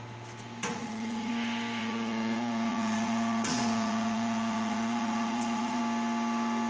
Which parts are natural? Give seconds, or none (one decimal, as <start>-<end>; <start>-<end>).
0.0-0.7; 1.3-1.8; 5.8-6.7